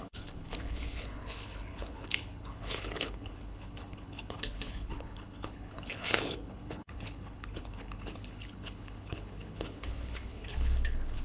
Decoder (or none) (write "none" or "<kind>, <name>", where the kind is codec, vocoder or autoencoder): codec, HILCodec